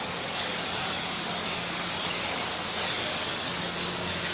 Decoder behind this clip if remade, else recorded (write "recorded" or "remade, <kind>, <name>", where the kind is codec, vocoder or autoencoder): remade, codec, DAC